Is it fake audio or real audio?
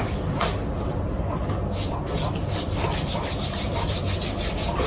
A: real